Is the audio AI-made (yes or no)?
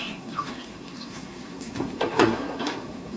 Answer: yes